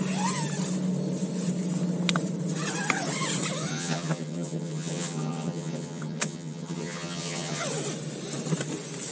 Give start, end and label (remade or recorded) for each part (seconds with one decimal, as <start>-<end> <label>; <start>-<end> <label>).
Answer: 0.0-3.7 recorded; 3.7-7.6 remade; 7.6-9.1 recorded